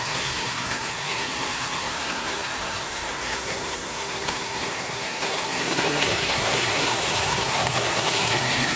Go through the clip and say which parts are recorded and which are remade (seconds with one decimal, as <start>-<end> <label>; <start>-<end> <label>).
0.0-8.8 remade